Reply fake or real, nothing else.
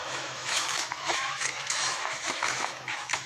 fake